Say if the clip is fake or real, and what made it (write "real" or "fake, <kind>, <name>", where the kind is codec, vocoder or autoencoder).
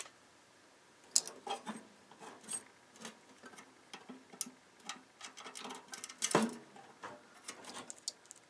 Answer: real